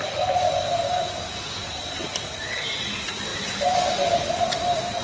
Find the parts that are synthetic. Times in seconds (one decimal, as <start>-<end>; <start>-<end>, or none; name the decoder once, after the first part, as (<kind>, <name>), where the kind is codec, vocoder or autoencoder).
none